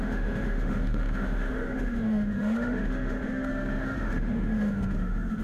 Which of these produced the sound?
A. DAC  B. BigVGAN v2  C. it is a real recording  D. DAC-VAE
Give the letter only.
D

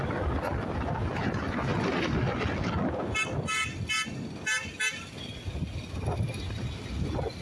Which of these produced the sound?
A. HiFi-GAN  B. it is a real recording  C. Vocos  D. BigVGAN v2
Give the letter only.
B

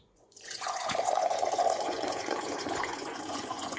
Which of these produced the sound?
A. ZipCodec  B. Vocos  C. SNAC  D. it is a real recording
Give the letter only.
B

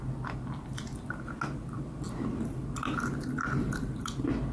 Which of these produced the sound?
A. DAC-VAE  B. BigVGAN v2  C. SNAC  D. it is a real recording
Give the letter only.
D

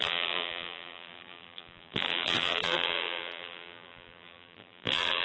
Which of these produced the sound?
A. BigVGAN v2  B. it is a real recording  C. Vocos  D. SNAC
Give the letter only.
A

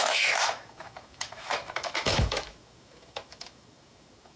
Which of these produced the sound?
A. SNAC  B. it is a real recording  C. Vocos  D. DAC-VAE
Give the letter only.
D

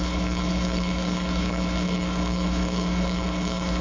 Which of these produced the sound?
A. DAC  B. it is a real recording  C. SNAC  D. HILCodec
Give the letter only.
D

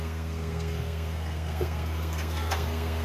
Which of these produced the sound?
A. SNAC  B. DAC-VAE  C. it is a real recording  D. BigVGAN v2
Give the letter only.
A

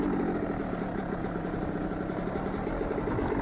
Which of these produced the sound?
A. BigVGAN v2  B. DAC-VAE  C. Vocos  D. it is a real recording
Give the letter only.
D